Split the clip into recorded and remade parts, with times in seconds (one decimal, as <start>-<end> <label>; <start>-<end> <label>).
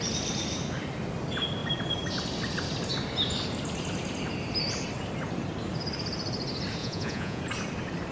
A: 0.0-6.8 recorded; 6.8-7.4 remade; 7.4-8.1 recorded